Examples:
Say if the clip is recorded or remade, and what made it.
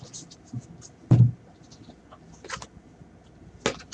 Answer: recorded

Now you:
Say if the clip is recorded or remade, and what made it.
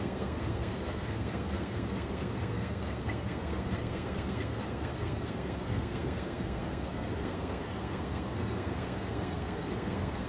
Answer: remade, codec, SNAC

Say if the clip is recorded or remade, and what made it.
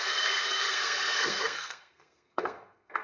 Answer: remade, codec, SNAC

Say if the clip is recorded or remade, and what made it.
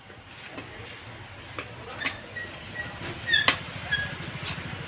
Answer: recorded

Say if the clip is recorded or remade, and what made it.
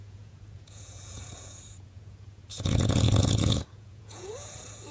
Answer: remade, vocoder, Vocos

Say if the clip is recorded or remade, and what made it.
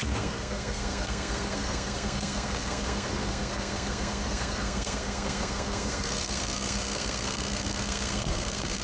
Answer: remade, codec, SNAC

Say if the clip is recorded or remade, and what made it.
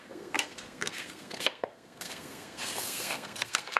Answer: remade, codec, SNAC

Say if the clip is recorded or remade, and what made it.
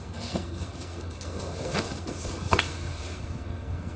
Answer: remade, codec, SNAC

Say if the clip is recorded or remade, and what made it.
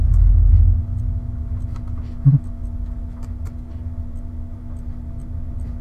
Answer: recorded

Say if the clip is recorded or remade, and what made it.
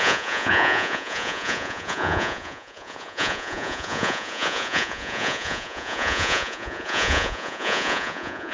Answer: remade, vocoder, Vocos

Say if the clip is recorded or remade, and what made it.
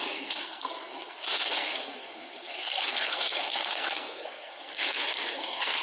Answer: remade, codec, SNAC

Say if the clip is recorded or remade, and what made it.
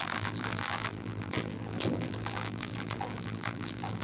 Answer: remade, vocoder, BigVGAN v2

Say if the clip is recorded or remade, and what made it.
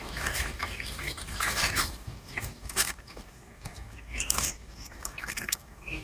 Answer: remade, codec, DAC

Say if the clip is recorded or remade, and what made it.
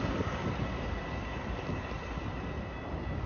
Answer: recorded